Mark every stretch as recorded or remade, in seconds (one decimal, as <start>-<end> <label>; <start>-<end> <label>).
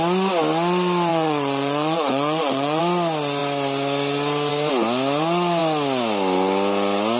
0.0-1.1 recorded; 1.1-2.8 remade; 2.8-7.2 recorded